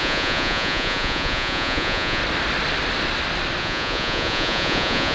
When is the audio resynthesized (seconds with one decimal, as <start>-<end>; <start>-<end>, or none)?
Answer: 0.0-2.2; 3.6-5.1